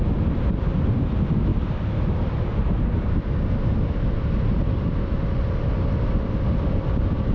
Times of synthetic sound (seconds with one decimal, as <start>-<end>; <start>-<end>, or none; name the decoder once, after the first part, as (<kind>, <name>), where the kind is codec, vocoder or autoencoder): none